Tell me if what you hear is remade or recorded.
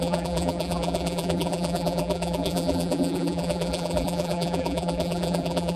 remade